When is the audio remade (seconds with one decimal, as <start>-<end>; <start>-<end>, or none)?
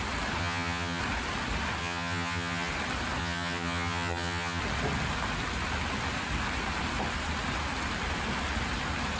0.4-1.0; 1.8-2.7; 3.2-4.6